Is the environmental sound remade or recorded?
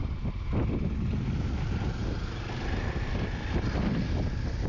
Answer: recorded